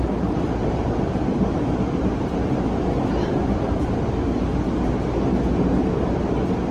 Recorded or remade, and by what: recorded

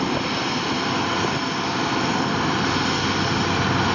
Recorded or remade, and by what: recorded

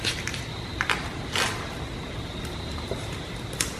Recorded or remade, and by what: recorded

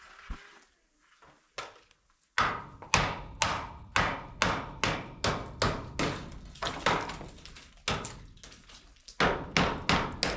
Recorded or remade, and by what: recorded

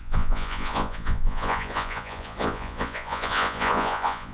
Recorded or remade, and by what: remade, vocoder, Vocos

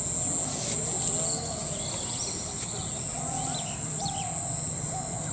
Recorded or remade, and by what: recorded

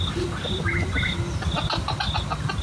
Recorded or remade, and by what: recorded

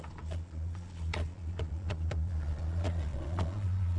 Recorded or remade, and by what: remade, vocoder, Vocos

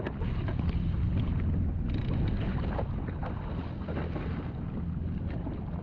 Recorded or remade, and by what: recorded